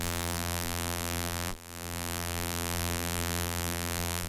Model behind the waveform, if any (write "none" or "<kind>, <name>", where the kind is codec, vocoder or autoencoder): vocoder, BigVGAN v2